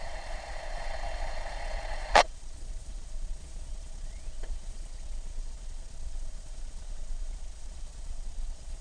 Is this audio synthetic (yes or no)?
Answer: yes